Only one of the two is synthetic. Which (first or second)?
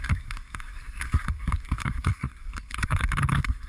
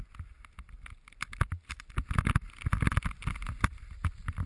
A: first